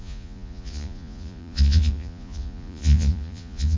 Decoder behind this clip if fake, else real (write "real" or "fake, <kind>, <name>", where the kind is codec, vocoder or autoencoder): fake, vocoder, Vocos